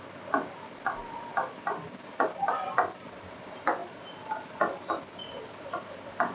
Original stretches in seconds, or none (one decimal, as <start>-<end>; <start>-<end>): 3.8-5.4